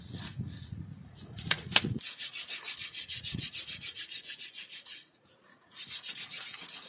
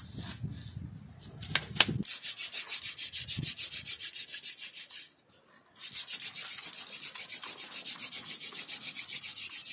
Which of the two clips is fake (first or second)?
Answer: first